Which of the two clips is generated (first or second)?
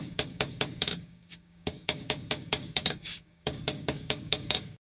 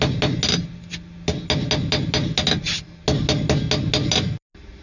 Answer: first